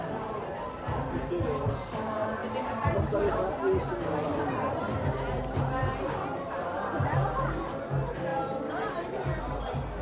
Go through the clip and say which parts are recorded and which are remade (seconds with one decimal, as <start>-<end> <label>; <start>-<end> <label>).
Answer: 0.0-2.4 recorded; 2.4-3.5 remade; 3.5-10.0 recorded